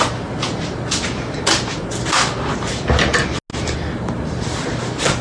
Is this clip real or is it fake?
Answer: real